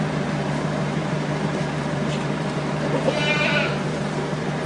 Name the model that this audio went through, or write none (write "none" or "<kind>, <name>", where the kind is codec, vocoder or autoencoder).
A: vocoder, BigVGAN v2